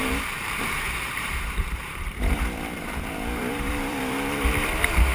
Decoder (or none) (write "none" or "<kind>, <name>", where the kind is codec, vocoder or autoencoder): vocoder, BigVGAN v2